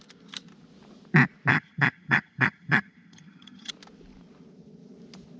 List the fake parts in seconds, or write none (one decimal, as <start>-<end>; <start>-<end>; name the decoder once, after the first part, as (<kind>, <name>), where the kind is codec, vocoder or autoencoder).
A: 1.5-3.7 (vocoder, HiFi-GAN)